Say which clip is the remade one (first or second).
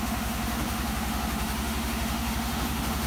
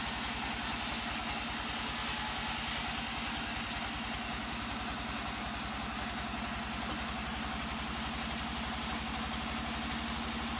first